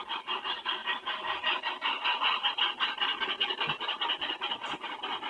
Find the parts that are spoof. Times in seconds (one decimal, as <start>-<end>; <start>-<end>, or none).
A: none